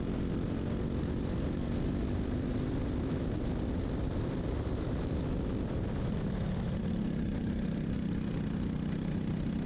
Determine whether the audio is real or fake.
real